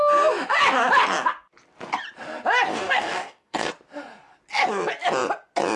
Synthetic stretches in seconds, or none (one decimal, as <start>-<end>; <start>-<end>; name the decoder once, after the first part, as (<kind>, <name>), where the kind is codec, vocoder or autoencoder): 2.7-3.7 (codec, DAC)